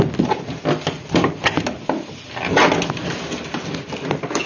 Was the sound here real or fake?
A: real